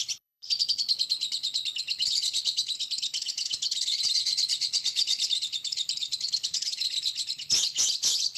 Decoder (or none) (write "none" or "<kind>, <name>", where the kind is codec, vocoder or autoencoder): codec, HILCodec